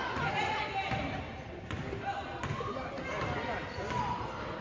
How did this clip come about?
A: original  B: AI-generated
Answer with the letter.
A